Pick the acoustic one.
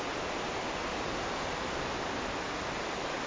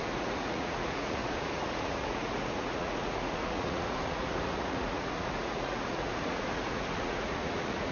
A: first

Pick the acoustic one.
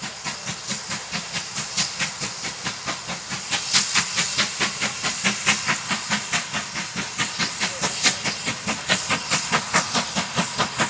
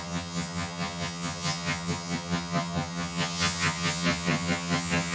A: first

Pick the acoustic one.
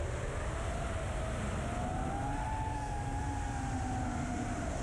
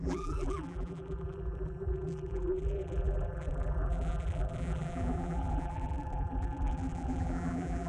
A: first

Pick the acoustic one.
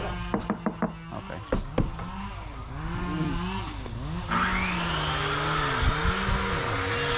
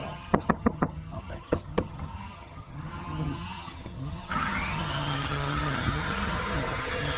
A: first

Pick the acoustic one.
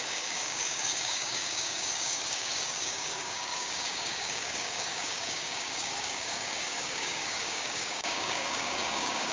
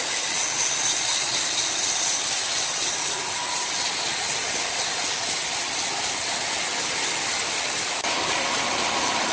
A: second